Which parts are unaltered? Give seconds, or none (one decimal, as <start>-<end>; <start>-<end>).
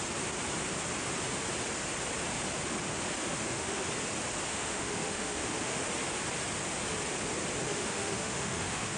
0.0-3.2; 3.9-4.5; 5.9-7.7